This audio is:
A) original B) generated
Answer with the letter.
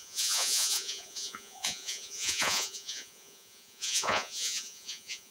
B